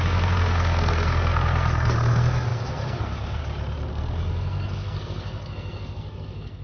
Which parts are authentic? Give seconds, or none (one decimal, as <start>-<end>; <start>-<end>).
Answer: 3.4-3.9